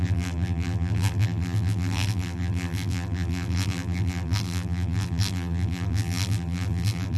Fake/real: fake